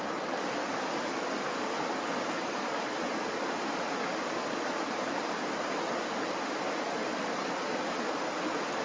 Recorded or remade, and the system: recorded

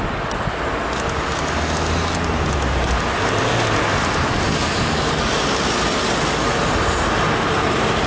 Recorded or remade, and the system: recorded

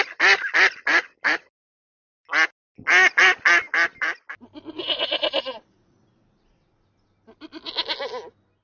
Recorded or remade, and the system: recorded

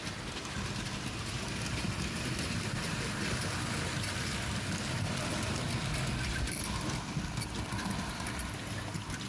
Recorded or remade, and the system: recorded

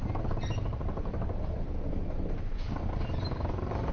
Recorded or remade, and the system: recorded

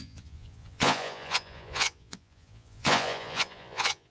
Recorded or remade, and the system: remade, vocoder, Vocos